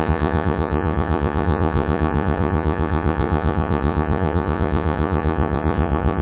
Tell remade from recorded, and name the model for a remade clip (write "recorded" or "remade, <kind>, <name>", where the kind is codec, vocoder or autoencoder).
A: remade, vocoder, Vocos